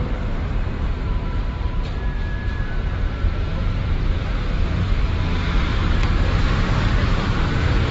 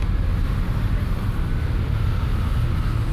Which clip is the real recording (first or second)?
second